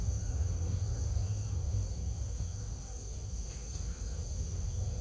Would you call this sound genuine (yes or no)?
no